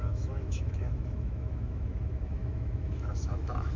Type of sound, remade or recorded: remade